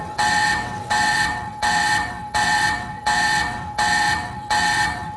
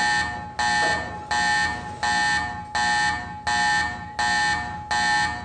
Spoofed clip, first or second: first